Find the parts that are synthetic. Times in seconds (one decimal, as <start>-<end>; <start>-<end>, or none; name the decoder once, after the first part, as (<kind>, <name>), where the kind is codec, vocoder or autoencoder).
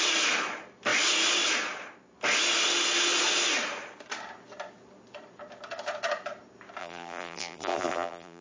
6.8-8.4 (vocoder, BigVGAN v2)